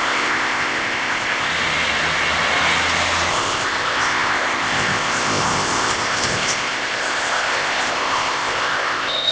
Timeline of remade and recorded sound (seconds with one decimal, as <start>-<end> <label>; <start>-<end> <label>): 0.0-1.5 remade; 1.5-3.3 recorded; 3.3-9.3 remade